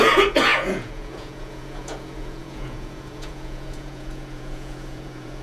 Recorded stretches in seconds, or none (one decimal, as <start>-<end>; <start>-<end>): none

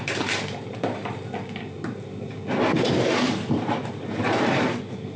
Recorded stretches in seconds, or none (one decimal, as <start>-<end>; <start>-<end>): 1.0-1.6; 2.4-3.5

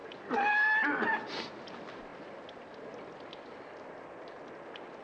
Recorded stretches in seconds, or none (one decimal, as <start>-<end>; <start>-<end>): 0.0-5.0

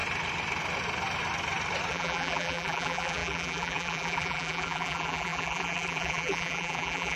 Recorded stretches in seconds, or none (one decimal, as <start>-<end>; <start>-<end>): 0.0-1.9

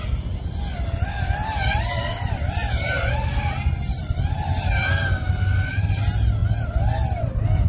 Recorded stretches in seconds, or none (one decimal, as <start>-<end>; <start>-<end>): 0.0-7.7

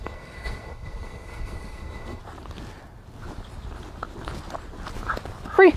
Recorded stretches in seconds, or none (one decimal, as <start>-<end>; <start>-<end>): 2.2-5.8

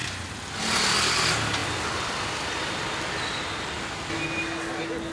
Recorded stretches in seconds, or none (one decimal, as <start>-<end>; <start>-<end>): 0.0-5.1